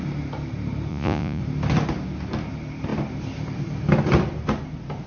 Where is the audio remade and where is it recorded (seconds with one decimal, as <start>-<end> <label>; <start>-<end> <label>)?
0.0-0.9 recorded; 0.9-1.4 remade; 1.4-5.1 recorded